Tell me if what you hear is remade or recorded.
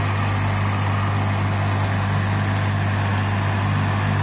recorded